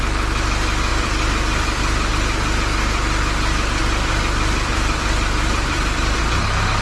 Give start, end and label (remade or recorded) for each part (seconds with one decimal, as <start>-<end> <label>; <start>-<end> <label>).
0.0-0.9 recorded; 0.9-2.1 remade; 2.1-3.8 recorded; 3.8-6.2 remade; 6.2-6.8 recorded